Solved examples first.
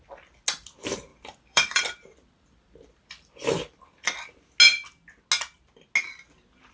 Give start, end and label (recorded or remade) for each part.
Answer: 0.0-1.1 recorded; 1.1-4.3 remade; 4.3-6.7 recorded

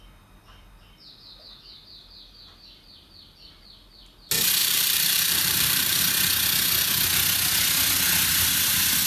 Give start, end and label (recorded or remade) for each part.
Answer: 0.0-4.6 recorded; 4.6-6.0 remade; 6.0-9.1 recorded